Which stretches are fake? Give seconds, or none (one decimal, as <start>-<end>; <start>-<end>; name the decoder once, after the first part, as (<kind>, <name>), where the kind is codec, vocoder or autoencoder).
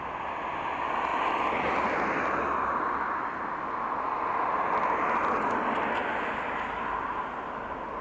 none